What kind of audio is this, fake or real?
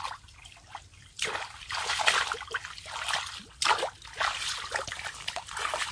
real